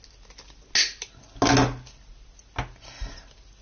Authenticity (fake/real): real